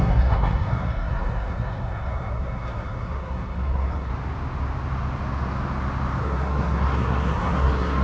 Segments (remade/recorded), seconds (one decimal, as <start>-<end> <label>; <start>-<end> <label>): 0.0-4.1 remade; 4.1-6.2 recorded; 6.2-8.0 remade